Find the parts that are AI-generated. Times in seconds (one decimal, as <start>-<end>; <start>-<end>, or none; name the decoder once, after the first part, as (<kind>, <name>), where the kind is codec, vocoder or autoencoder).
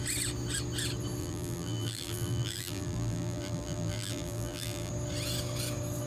1.2-4.9 (vocoder, BigVGAN v2)